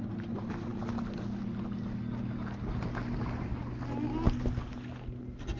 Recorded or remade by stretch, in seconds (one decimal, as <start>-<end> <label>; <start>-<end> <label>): 0.0-5.6 recorded